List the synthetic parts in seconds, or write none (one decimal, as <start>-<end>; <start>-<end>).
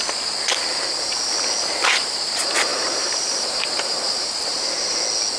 2.7-4.6